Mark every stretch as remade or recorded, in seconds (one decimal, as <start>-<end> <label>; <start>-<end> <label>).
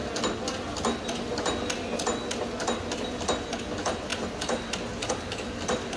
0.0-6.0 recorded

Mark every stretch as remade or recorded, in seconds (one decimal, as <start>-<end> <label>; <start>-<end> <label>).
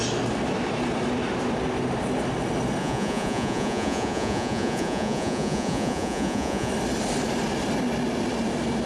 0.0-2.8 recorded; 2.8-6.7 remade; 6.7-8.9 recorded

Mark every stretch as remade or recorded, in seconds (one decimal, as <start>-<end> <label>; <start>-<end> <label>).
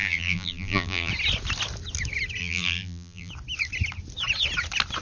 0.0-1.1 remade; 1.1-2.4 recorded; 2.4-3.3 remade; 3.3-5.0 recorded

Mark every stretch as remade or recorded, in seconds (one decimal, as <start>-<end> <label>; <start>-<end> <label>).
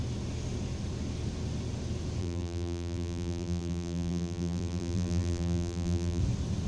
0.0-2.2 recorded; 2.2-6.2 remade; 6.2-6.7 recorded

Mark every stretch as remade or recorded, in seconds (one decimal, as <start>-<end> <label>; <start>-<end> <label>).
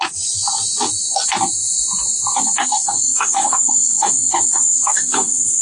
0.0-2.6 recorded; 2.6-5.6 remade